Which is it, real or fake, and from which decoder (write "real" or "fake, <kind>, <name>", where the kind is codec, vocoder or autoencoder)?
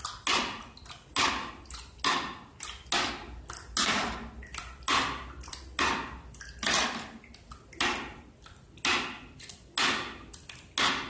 real